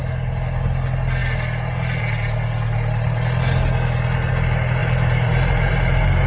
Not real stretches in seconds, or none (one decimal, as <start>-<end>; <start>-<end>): 4.8-6.3